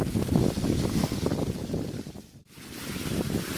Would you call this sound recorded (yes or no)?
yes